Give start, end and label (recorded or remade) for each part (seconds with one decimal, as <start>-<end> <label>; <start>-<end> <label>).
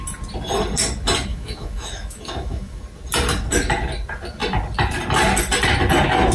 0.0-1.3 recorded; 1.3-2.8 remade; 2.8-6.3 recorded